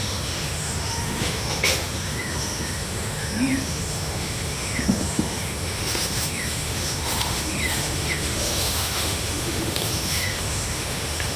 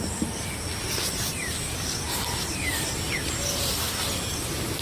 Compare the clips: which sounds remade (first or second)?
first